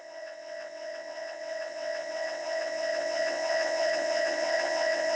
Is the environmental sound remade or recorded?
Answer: remade